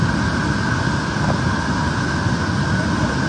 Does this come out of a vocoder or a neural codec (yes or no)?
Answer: no